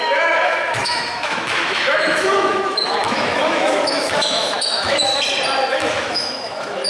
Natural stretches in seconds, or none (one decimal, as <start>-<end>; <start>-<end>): 5.1-5.7